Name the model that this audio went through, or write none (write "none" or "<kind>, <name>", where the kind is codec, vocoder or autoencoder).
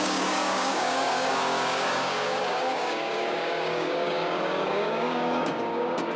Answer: codec, DAC